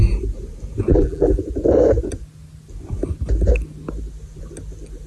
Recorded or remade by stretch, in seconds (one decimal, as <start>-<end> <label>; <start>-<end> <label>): 0.0-0.9 recorded; 0.9-1.4 remade; 1.4-5.1 recorded